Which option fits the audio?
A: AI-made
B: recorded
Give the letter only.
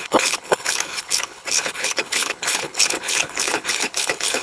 A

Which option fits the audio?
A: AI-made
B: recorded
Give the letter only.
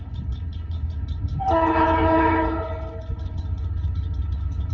A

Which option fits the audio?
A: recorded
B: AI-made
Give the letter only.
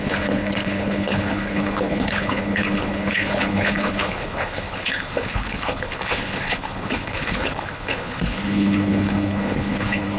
B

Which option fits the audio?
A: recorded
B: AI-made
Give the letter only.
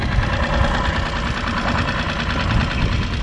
A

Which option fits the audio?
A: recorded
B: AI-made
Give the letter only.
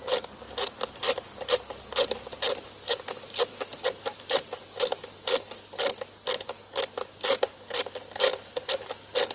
A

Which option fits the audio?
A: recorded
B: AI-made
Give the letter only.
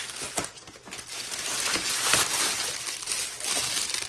A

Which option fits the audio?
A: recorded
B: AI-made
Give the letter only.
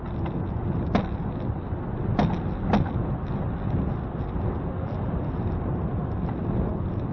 A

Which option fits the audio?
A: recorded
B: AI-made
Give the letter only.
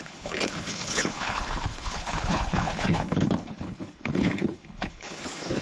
B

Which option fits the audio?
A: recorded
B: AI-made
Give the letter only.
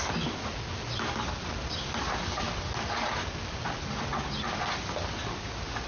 A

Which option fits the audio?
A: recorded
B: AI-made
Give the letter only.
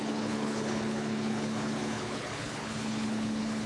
B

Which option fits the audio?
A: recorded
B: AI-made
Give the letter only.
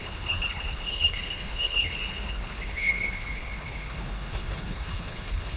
B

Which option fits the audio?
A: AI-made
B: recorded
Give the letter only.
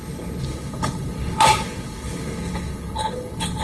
A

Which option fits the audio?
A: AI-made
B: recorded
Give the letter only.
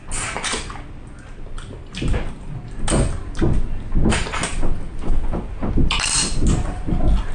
B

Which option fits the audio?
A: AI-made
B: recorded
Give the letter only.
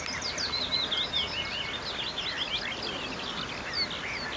B